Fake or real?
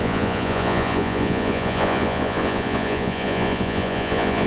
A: fake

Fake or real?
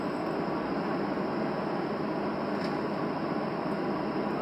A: real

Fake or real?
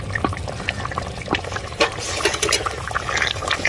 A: real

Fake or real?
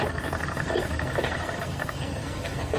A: fake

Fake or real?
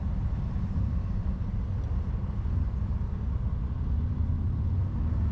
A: real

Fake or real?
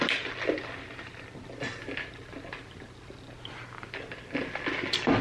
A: real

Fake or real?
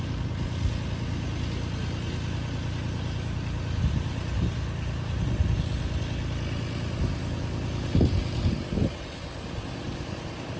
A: real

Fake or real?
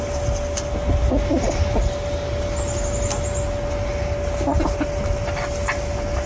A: real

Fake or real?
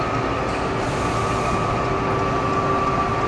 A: real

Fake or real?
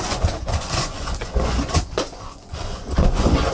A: fake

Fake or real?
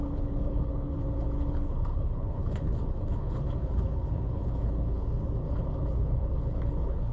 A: fake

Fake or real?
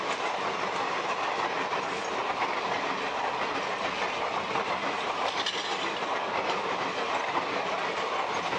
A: real